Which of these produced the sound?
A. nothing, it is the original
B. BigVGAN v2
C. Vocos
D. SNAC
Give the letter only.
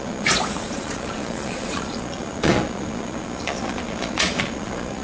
C